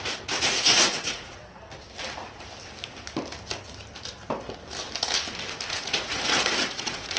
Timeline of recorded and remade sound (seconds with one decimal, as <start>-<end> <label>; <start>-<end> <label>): 0.0-1.4 remade; 1.4-5.7 recorded; 5.7-7.2 remade